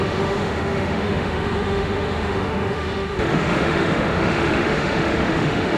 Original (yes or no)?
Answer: no